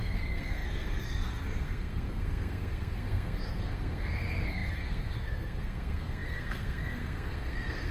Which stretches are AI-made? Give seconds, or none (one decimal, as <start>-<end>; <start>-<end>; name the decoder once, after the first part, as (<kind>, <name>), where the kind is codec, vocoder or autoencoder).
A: 0.0-7.9 (codec, SNAC)